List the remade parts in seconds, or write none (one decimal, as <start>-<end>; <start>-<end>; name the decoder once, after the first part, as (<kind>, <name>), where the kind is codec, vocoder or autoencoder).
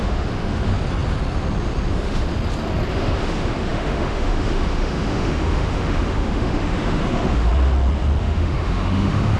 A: 0.0-0.7 (autoencoder, DAC-VAE); 1.9-2.3; 2.9-7.5; 8.2-9.4